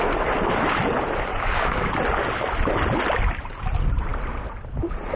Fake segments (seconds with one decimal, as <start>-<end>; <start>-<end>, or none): 1.3-1.9